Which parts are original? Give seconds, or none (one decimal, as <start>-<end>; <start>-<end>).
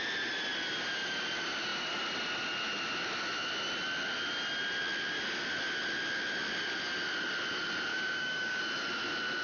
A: 0.0-7.9; 8.6-9.4